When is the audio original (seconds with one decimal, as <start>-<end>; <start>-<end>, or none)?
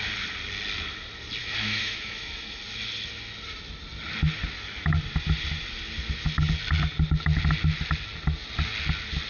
0.0-1.4; 2.6-9.3